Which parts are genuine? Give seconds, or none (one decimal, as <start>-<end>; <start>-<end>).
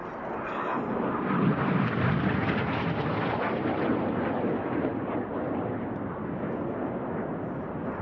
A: 0.0-8.0